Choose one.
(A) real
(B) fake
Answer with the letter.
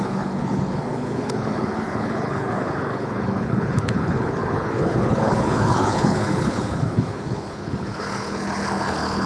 B